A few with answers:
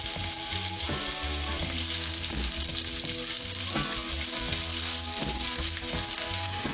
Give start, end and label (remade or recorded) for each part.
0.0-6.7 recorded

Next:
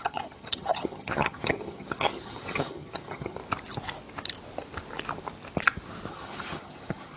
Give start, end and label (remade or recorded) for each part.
0.0-3.4 remade; 3.4-6.1 recorded; 6.1-7.2 remade

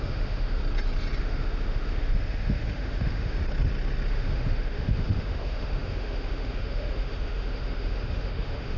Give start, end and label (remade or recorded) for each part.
0.0-0.6 remade; 0.6-1.2 recorded; 1.2-3.4 remade; 3.4-4.1 recorded; 4.1-8.8 remade

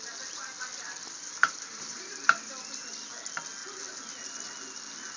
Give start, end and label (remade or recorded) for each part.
0.0-1.4 recorded; 1.4-2.5 remade; 2.5-5.2 recorded

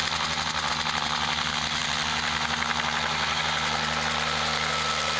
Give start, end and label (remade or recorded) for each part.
0.0-5.2 recorded

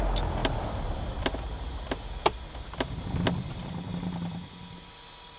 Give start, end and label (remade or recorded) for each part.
0.0-5.4 recorded

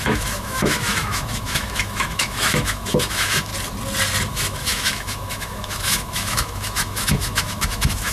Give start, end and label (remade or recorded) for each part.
0.0-3.5 remade; 3.5-4.3 recorded; 4.3-8.1 remade